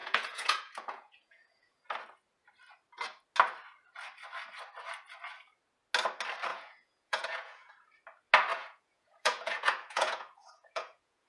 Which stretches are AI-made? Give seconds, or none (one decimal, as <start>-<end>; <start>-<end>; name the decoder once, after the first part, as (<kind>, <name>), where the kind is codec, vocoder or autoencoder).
0.0-1.8 (vocoder, Vocos); 6.5-7.7; 8.5-11.3